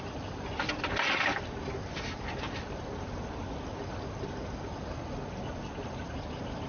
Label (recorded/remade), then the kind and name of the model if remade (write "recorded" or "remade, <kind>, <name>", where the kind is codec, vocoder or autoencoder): recorded